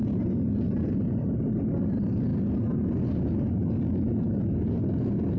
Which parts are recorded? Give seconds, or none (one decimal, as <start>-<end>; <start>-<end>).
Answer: 0.0-1.1; 2.3-5.4